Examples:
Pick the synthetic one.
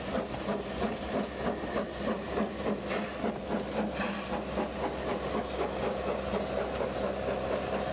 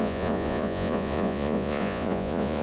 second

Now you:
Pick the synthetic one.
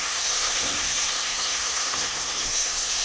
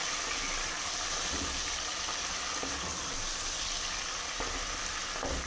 first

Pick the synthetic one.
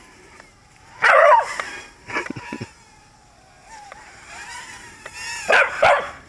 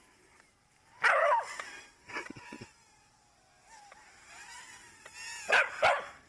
first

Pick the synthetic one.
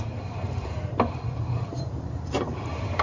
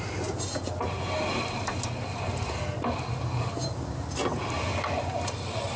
first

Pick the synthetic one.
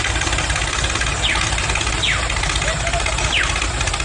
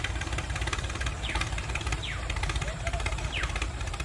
second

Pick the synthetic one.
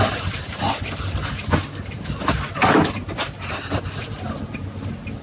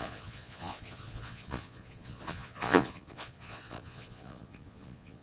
second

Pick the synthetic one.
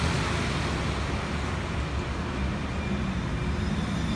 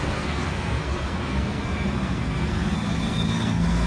second